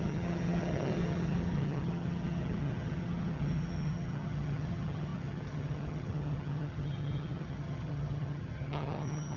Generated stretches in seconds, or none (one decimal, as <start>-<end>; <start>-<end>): 0.0-9.4